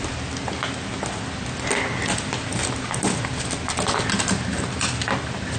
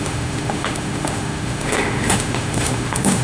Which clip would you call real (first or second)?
first